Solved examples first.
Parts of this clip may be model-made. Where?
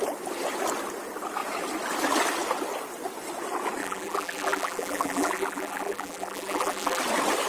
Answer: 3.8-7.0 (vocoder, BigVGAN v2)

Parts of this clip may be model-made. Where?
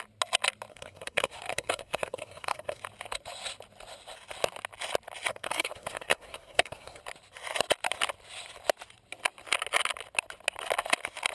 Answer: 0.7-2.8 (codec, SNAC); 5.3-7.0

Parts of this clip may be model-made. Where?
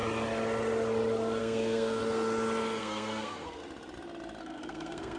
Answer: 1.4-2.0 (codec, SNAC); 2.8-3.6; 4.4-5.2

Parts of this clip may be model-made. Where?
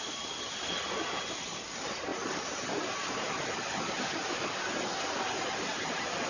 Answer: none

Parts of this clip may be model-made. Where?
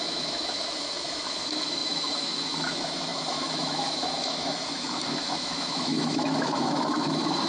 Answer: 0.0-7.5 (autoencoder, DAC-VAE)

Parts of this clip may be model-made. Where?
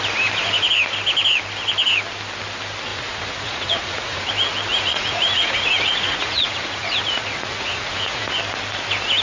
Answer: 2.9-4.3 (vocoder, Vocos); 4.7-8.3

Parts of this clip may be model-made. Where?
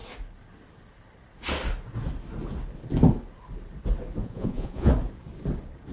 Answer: 4.2-4.9 (vocoder, Vocos)